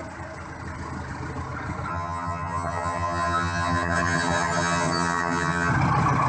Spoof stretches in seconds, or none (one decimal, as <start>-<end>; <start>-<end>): 1.9-5.7